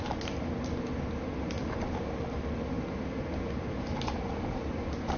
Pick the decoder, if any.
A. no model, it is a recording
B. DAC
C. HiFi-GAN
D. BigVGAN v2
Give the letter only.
A